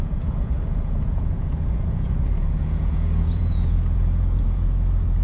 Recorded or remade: remade